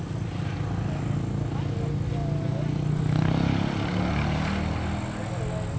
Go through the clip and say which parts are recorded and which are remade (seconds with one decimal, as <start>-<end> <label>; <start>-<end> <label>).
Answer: 0.0-5.8 recorded